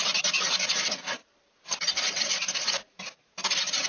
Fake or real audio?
real